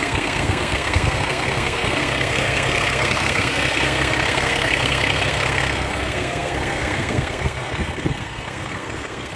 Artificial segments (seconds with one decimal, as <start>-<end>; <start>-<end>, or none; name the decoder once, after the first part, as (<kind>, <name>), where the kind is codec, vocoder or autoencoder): 0.0-9.4 (codec, SNAC)

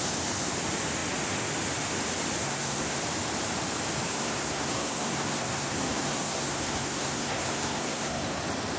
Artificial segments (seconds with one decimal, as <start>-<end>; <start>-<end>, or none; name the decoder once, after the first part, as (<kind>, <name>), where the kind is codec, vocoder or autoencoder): 2.4-3.0 (codec, SNAC); 4.1-8.4

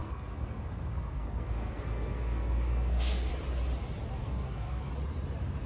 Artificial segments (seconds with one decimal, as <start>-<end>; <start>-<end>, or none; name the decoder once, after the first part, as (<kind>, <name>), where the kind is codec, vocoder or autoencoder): 0.0-3.3 (codec, SNAC); 4.2-4.9

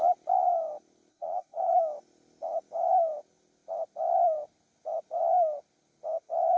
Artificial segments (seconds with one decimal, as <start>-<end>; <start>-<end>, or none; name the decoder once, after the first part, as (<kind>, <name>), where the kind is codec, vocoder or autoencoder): 1.1-1.8 (codec, SNAC)

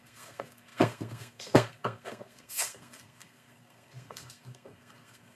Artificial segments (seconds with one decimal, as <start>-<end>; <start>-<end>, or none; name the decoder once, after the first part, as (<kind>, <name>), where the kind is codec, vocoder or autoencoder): 0.0-5.4 (codec, SNAC)

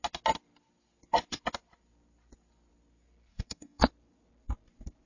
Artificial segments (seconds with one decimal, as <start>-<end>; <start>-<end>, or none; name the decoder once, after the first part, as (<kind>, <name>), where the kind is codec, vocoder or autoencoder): 3.3-3.8 (codec, SNAC)